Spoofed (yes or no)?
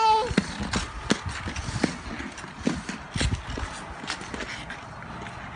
no